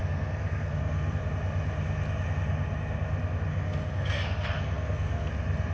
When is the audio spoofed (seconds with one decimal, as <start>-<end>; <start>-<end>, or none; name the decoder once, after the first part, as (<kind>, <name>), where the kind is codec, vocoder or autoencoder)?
0.0-1.2 (codec, SNAC); 3.5-5.3